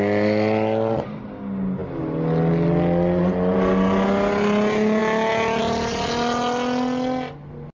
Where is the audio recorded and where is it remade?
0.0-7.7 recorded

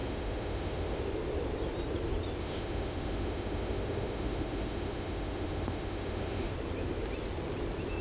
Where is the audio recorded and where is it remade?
0.0-1.0 remade; 1.0-2.4 recorded; 2.4-6.5 remade; 6.5-8.0 recorded